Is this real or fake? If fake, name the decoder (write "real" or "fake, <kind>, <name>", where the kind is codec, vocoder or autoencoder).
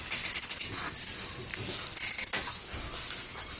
real